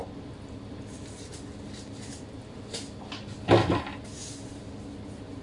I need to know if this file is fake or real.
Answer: real